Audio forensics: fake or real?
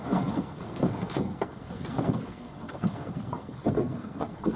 fake